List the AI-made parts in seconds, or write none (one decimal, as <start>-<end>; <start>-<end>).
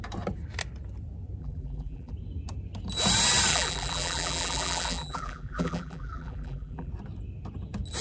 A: 1.4-2.1; 3.5-6.9